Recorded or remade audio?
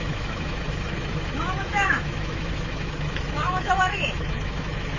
remade